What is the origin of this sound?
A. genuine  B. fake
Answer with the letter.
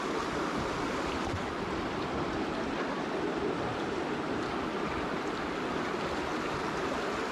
A